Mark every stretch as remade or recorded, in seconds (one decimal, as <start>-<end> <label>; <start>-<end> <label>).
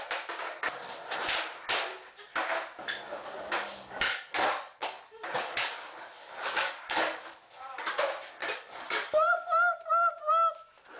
0.0-3.2 recorded; 3.2-7.9 remade; 7.9-8.4 recorded; 8.4-9.3 remade; 9.3-11.0 recorded